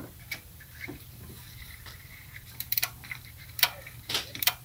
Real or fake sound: fake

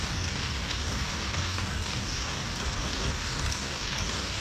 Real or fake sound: fake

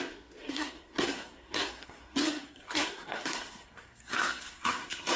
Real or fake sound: fake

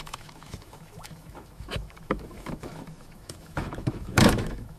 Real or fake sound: fake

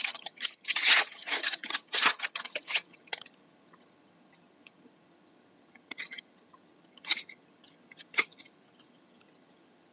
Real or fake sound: fake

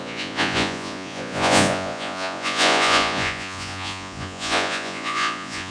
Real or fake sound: fake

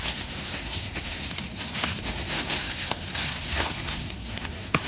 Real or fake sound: fake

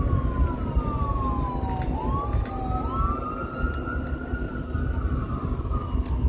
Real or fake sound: real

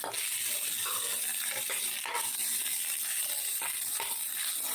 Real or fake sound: real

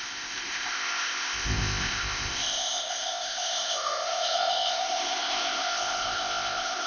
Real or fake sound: fake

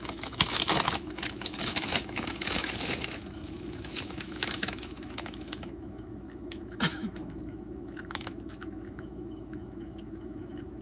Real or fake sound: fake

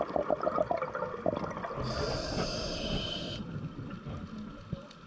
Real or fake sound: real